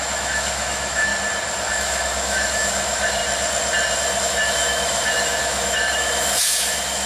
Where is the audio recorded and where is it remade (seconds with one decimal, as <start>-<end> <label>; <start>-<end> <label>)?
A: 0.0-1.1 remade; 1.1-1.7 recorded; 1.7-3.2 remade; 3.2-4.2 recorded; 4.2-7.1 remade